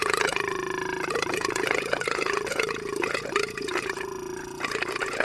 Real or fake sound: fake